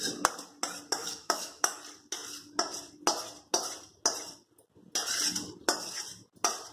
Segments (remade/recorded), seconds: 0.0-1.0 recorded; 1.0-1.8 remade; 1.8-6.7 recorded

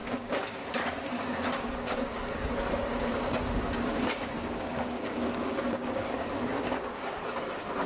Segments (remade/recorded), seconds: 0.0-2.5 remade; 2.5-2.9 recorded; 2.9-7.2 remade; 7.2-7.9 recorded

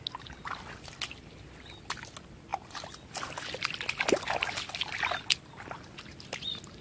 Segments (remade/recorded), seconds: 0.0-6.8 recorded

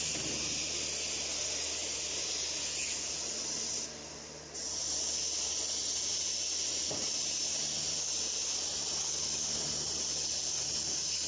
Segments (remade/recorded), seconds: 0.0-11.3 recorded